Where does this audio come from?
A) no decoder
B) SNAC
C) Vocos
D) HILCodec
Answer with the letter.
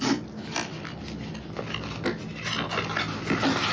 A